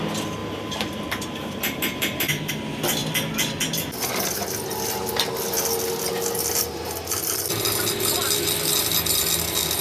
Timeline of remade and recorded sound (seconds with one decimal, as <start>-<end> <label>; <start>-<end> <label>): 0.0-0.4 recorded; 0.4-2.5 remade; 2.5-9.8 recorded